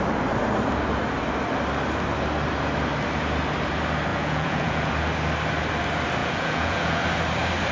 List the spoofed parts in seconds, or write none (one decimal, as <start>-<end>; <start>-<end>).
4.1-4.9; 6.2-7.0